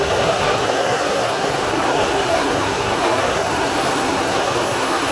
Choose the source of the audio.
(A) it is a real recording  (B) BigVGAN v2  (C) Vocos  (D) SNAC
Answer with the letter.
D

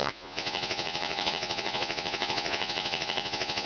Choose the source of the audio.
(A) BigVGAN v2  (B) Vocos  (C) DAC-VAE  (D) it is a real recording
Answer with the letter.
B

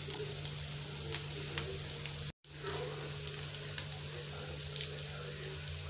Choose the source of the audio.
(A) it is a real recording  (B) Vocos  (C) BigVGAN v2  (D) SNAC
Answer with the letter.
A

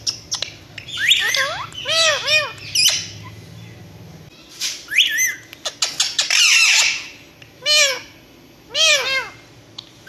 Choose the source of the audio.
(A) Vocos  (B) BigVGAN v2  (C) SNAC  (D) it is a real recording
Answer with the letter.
D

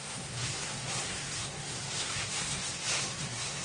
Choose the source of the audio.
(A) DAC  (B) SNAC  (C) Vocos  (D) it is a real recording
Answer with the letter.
B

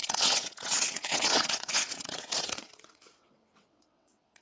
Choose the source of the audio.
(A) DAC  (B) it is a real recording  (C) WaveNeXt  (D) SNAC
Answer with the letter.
C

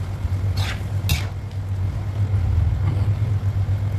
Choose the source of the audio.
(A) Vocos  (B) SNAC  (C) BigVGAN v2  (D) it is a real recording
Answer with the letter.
D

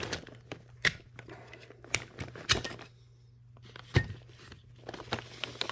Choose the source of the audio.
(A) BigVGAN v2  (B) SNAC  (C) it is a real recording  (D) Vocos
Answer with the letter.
C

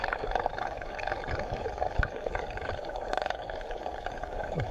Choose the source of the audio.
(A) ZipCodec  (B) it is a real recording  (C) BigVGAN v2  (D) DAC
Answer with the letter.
D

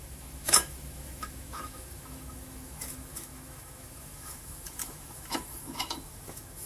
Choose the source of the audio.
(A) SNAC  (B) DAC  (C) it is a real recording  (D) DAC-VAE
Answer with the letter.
D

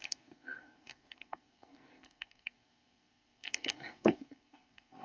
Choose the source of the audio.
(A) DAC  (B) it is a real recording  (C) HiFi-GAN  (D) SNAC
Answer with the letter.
D